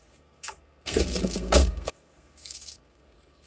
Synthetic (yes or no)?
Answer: yes